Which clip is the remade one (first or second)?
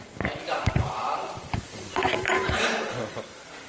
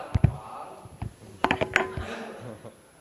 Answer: first